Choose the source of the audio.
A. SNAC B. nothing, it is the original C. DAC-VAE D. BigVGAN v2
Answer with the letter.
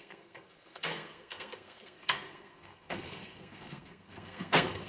A